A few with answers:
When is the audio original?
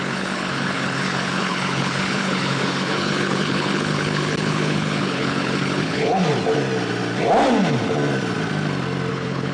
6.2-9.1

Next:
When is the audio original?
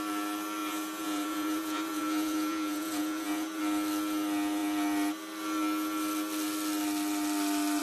0.0-0.6; 3.6-7.8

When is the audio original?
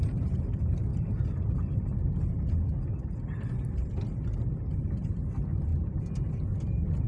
0.9-5.2; 5.7-6.6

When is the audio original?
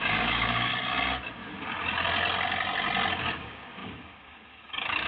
0.7-3.2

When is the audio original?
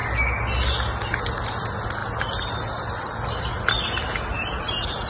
0.0-5.1